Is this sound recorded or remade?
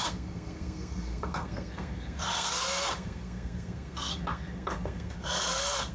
remade